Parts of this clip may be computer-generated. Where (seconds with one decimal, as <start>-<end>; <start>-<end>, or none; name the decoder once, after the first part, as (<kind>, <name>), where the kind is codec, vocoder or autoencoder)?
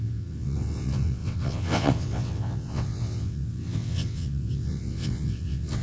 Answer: 0.0-5.8 (vocoder, WaveNeXt)